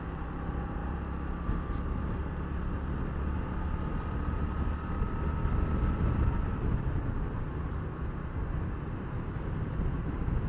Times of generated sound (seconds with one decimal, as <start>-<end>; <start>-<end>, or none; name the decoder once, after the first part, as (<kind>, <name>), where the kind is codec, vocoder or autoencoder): none